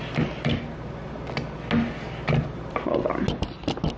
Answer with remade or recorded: recorded